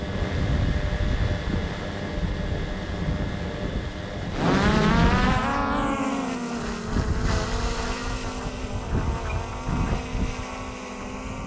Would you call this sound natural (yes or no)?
yes